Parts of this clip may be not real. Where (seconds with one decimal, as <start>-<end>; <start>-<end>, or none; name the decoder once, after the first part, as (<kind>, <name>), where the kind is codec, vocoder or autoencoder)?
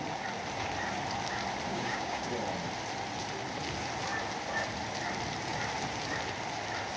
1.7-2.3 (codec, DAC)